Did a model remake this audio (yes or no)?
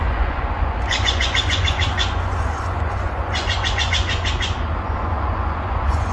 yes